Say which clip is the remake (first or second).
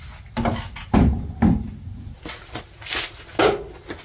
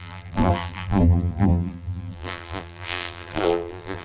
second